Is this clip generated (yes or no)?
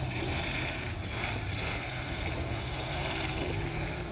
yes